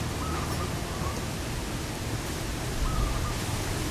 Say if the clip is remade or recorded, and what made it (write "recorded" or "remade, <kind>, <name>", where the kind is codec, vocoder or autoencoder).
recorded